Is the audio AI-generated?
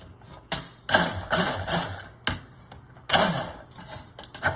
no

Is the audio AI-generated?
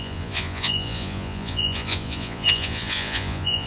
yes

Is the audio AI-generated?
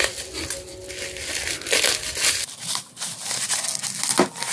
no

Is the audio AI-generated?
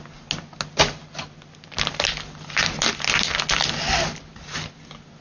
no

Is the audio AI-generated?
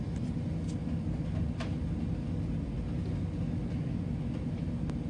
no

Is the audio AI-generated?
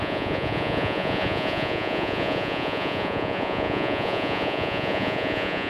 yes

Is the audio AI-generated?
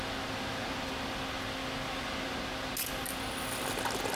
no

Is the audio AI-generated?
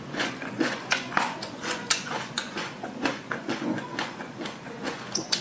yes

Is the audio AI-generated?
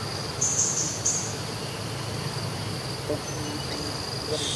no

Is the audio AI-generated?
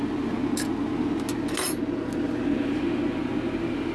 no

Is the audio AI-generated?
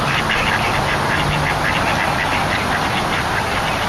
no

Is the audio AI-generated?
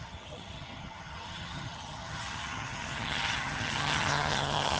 yes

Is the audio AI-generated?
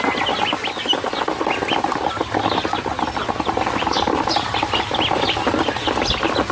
no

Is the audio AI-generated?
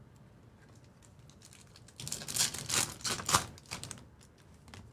no